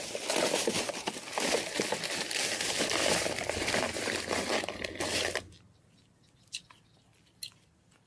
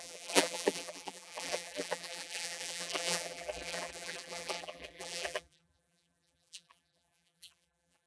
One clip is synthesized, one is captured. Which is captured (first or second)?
first